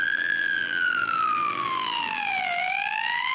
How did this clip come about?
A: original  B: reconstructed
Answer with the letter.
B